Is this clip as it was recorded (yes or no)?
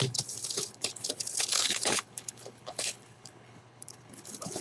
no